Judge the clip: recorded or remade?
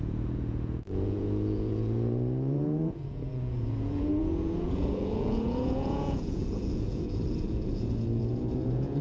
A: remade